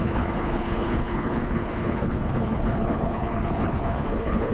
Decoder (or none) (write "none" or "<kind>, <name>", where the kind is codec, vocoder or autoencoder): codec, HILCodec